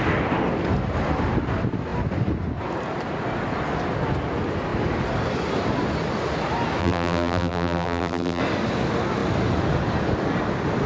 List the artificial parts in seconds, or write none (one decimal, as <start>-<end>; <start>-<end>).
6.8-8.4

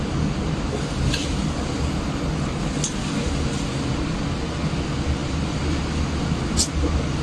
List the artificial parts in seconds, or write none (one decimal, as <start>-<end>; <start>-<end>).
1.2-2.2; 5.2-5.8

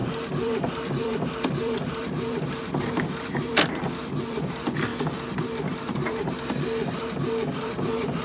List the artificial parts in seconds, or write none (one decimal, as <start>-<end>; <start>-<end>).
0.0-4.9; 5.4-8.2

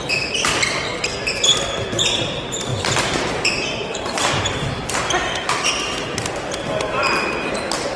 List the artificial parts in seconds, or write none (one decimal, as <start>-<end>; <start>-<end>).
2.7-7.5

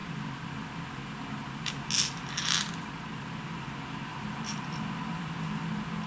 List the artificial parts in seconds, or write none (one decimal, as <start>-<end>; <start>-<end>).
4.1-5.6

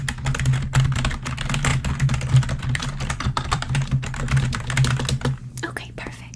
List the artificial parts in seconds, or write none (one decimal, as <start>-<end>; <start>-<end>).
1.7-4.6

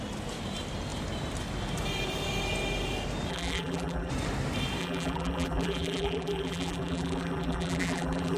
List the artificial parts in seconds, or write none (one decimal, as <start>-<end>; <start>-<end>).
3.3-4.1; 4.8-8.4

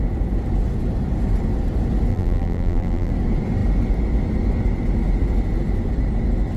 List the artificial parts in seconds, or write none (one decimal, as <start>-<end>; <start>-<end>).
2.1-3.1